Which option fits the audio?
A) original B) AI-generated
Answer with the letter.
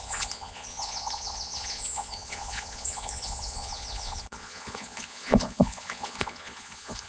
B